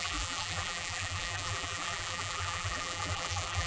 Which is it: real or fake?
fake